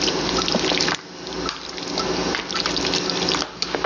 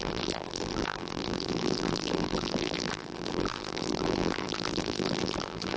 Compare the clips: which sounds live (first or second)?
first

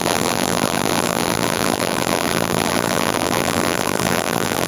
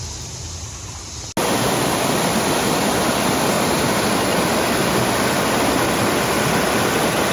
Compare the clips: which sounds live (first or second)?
second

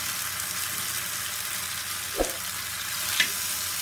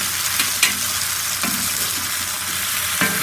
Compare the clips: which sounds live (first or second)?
second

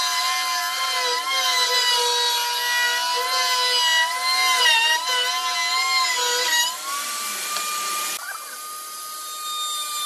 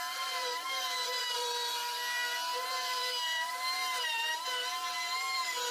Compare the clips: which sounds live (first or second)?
first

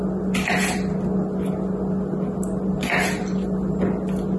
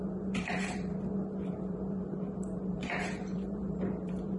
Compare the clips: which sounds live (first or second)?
first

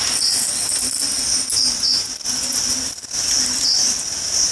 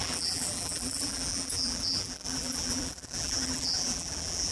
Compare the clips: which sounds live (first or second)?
first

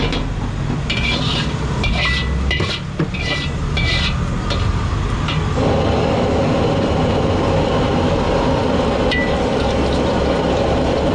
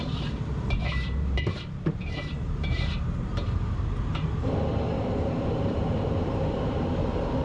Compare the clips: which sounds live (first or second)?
first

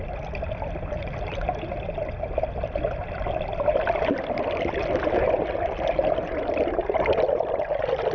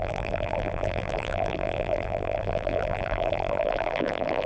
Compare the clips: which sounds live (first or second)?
first